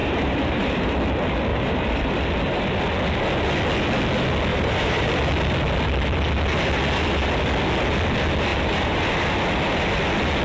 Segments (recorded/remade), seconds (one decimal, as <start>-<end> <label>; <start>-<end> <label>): 0.0-0.9 remade; 0.9-1.5 recorded; 1.5-2.2 remade; 2.2-4.5 recorded; 4.5-5.2 remade; 5.2-8.5 recorded; 8.5-9.1 remade; 9.1-10.4 recorded